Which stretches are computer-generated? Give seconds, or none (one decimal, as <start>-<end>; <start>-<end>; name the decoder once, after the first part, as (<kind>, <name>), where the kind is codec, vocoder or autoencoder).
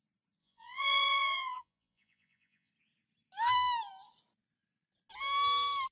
0.4-2.7 (vocoder, Vocos)